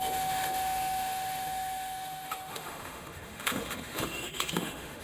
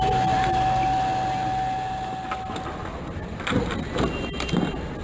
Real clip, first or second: second